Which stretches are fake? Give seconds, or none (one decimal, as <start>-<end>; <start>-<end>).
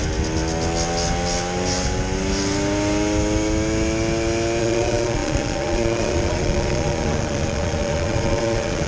4.6-8.9